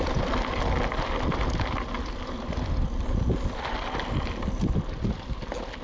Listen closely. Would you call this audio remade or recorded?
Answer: recorded